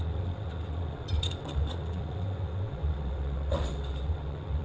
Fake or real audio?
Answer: fake